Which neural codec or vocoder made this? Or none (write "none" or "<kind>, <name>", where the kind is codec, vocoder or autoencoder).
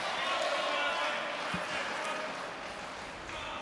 none